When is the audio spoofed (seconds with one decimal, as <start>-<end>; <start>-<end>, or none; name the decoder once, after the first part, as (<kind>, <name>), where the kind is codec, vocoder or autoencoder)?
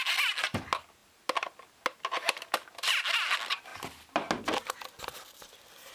none